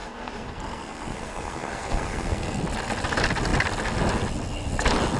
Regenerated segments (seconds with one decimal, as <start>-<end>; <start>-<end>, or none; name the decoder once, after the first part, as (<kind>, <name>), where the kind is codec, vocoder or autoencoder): 0.0-2.6 (codec, SNAC)